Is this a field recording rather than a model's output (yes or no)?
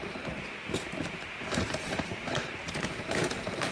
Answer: no